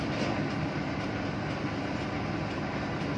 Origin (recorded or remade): recorded